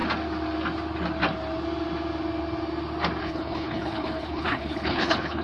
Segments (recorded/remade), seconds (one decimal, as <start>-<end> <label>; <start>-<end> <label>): 0.0-3.2 recorded; 3.2-5.4 remade